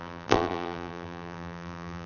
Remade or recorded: remade